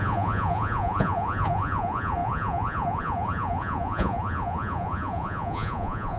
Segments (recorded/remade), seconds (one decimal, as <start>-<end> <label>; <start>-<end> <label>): 0.0-6.2 remade